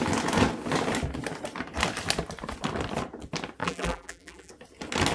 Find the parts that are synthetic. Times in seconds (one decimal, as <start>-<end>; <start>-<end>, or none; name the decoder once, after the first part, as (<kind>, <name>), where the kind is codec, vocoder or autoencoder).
3.6-4.5 (vocoder, BigVGAN v2)

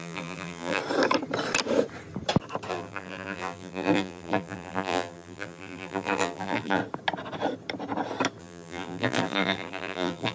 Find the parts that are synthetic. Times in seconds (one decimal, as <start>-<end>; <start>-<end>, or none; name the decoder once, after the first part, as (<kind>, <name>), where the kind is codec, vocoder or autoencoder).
0.0-0.8 (vocoder, BigVGAN v2); 2.7-6.8; 8.4-10.3

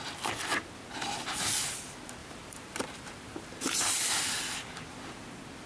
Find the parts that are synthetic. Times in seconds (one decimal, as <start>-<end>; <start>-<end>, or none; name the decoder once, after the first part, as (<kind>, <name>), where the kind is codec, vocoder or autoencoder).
2.2-4.1 (vocoder, BigVGAN v2)

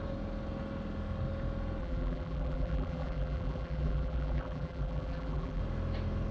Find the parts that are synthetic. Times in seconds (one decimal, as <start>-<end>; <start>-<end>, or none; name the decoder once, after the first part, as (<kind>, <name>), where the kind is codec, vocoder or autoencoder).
1.8-5.6 (vocoder, BigVGAN v2)